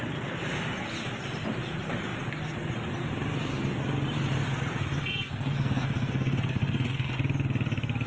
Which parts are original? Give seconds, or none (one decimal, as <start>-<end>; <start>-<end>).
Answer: 0.0-5.0; 7.1-8.1